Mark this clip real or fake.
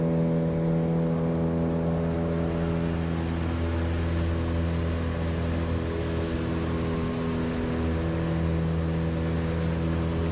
real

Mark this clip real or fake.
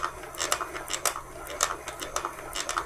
real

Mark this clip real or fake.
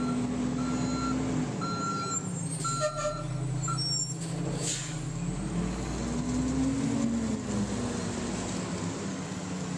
real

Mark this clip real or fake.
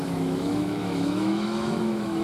fake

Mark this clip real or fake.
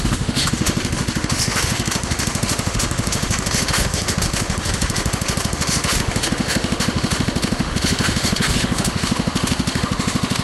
fake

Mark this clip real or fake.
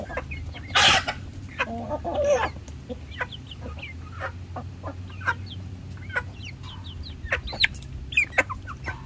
real